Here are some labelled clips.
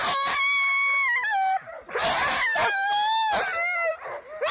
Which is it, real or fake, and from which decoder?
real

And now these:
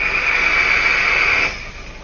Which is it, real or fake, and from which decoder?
real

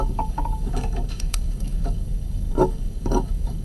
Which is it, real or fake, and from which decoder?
fake, codec, DAC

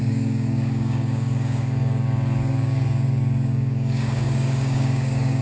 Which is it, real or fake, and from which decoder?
fake, codec, DAC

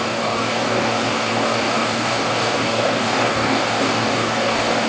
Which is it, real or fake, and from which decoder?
fake, codec, DAC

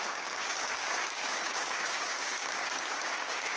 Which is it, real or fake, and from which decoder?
fake, codec, DAC